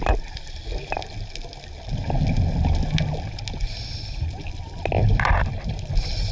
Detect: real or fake real